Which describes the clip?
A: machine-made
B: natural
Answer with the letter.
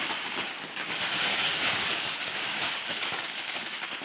A